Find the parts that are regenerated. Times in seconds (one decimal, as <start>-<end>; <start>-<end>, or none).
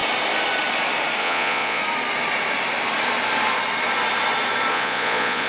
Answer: 1.2-1.8; 4.7-5.5